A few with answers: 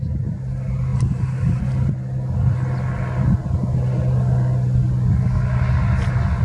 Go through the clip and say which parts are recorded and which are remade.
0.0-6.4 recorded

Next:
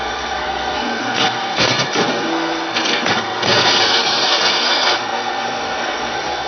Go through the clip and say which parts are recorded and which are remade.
0.0-6.5 remade

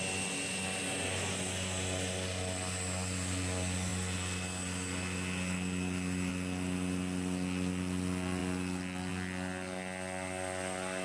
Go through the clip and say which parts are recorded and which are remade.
0.0-11.0 recorded

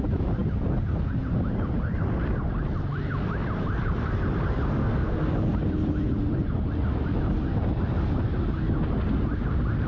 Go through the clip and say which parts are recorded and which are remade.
0.0-4.8 recorded; 4.8-5.3 remade; 5.3-9.9 recorded

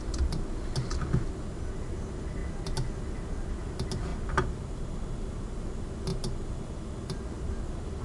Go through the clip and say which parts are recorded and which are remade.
0.0-8.0 recorded

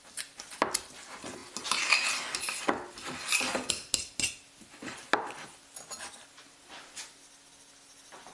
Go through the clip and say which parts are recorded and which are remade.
0.0-8.3 recorded